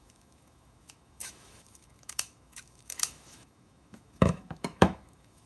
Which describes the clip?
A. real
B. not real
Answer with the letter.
B